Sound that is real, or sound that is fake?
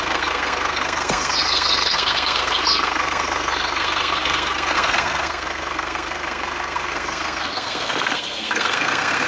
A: fake